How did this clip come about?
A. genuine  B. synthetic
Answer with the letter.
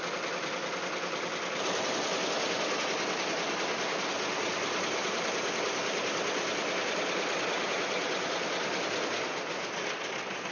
A